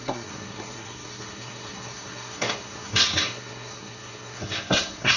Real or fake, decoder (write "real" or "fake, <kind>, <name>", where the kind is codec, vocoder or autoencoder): fake, codec, SNAC